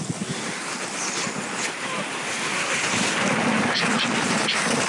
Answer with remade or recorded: recorded